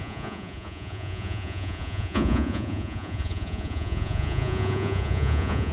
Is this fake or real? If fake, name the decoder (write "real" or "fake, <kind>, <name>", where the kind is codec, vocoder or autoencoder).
fake, vocoder, Vocos